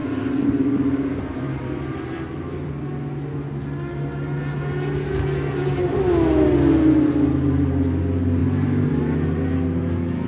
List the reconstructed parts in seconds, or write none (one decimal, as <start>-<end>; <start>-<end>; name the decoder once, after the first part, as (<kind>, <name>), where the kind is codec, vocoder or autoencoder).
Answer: 0.0-2.8 (vocoder, BigVGAN v2); 8.4-9.0

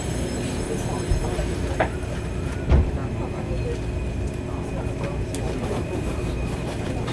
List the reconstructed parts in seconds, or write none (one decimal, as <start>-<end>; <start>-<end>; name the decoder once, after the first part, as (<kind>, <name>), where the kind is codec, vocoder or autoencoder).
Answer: 0.0-3.0 (vocoder, BigVGAN v2); 5.6-7.1